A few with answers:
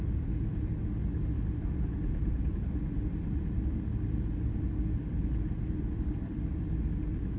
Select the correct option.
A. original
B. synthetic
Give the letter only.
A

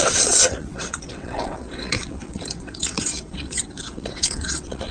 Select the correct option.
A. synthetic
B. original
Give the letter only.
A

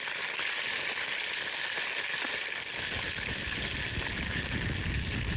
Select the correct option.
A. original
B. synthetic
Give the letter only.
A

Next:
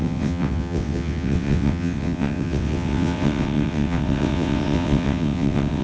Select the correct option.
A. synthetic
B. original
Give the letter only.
A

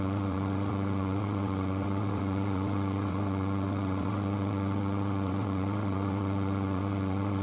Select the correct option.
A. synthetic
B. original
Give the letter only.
A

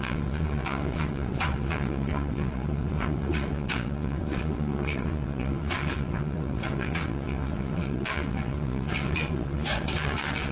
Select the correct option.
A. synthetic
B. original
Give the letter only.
A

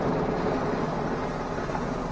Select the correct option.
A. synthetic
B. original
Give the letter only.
B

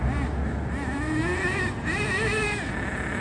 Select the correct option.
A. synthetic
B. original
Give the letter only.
B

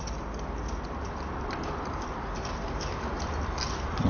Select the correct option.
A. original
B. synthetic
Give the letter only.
A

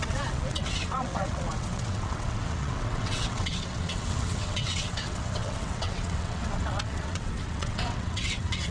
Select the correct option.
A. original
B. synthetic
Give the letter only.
B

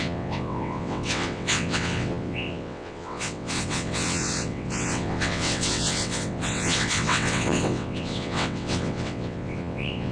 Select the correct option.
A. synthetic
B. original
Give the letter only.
A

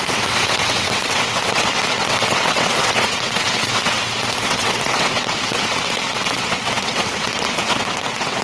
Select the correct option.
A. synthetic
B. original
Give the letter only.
A